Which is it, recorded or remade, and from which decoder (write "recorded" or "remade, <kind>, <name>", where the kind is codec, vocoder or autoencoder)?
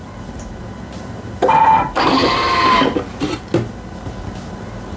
recorded